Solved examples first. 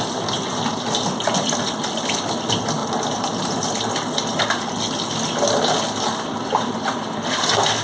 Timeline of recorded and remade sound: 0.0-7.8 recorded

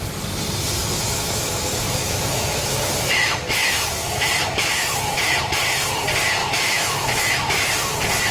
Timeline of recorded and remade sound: 0.0-0.8 recorded; 0.8-5.6 remade; 5.6-6.4 recorded; 6.4-7.7 remade; 7.7-8.3 recorded

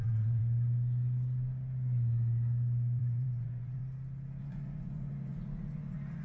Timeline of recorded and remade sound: 0.0-0.4 remade; 0.4-3.0 recorded; 3.0-3.8 remade; 3.8-4.4 recorded; 4.4-6.2 remade

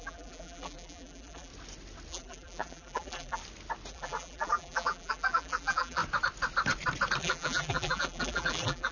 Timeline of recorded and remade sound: 0.0-1.5 remade; 1.5-2.1 recorded; 2.1-3.4 remade; 3.4-3.9 recorded; 3.9-6.0 remade; 6.0-7.2 recorded; 7.2-8.9 remade